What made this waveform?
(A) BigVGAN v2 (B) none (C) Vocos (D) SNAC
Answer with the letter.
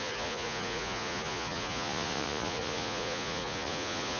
C